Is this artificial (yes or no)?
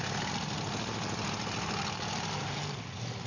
no